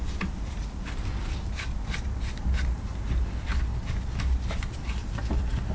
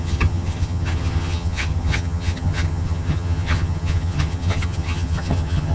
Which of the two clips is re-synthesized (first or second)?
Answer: second